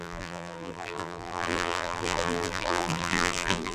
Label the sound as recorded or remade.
remade